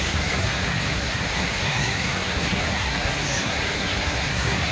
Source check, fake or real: fake